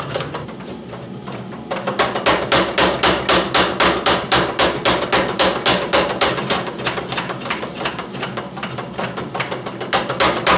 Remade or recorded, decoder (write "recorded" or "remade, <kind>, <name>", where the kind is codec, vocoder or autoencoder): recorded